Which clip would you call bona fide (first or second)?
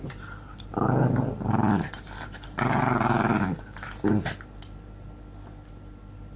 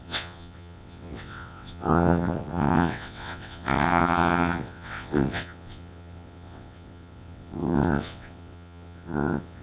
first